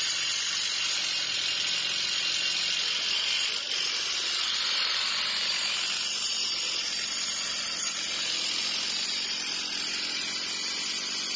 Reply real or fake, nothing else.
real